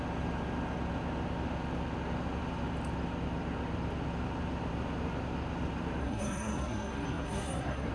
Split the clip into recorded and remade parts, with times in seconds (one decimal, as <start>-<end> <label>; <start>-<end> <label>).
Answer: 0.0-6.0 recorded; 6.0-7.9 remade